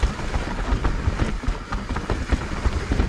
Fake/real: real